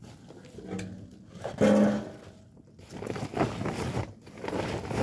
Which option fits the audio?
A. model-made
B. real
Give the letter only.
B